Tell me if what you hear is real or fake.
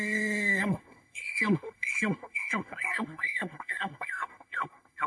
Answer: fake